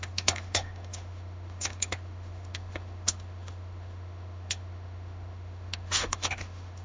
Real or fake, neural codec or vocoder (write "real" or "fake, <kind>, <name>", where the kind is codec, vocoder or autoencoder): fake, autoencoder, DAC-VAE